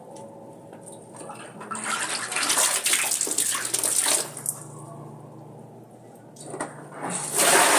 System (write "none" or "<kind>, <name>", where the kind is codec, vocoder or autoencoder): none